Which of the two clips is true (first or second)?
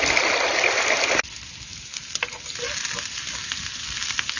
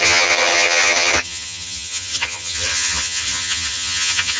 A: first